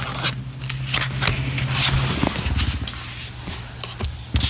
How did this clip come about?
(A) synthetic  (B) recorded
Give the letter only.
B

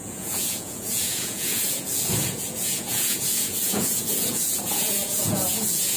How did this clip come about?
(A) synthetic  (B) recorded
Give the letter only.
A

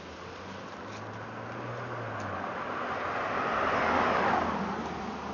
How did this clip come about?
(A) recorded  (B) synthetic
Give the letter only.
A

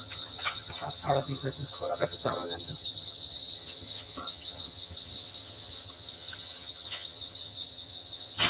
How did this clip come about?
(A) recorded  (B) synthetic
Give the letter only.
B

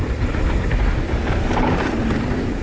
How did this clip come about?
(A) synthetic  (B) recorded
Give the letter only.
B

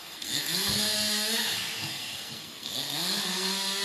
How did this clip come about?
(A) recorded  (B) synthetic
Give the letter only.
B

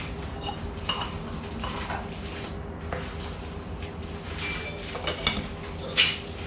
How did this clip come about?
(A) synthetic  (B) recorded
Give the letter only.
B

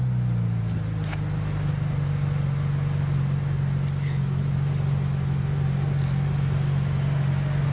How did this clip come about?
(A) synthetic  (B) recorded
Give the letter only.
B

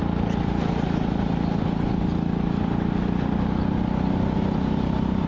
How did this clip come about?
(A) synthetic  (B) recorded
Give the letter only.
B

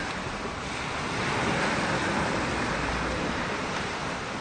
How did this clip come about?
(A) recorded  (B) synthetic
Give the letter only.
B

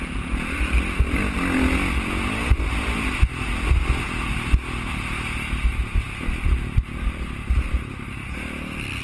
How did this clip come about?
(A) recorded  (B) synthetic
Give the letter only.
A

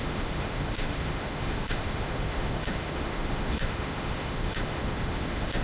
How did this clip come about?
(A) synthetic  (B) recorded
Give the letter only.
A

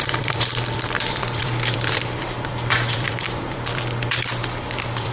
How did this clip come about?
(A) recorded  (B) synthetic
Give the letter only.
B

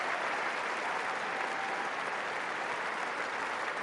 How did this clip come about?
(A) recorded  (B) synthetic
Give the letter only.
A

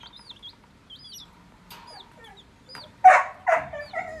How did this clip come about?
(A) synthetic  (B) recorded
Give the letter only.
B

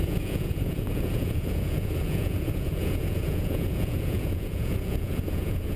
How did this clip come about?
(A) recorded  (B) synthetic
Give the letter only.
B